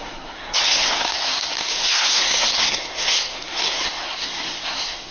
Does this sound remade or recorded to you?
remade